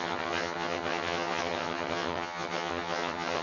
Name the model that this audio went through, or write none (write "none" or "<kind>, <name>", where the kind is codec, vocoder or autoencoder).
vocoder, HiFi-GAN